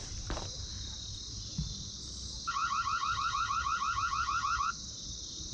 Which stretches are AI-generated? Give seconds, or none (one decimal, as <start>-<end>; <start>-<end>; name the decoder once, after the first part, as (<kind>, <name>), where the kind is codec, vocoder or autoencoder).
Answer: none